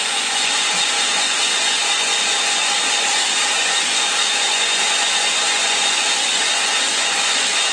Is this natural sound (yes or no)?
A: no